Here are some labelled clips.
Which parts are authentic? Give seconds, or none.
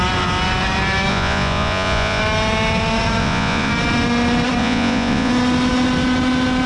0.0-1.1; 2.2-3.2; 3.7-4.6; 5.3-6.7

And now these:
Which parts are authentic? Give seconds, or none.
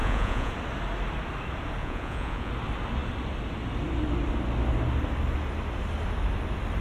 0.5-1.8; 2.5-6.8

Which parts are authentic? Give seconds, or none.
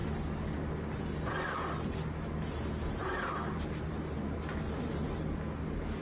0.0-6.0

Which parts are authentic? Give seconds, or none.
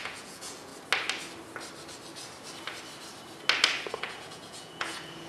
0.7-3.9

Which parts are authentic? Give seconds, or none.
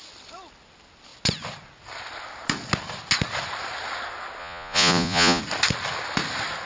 0.0-4.4; 5.4-6.7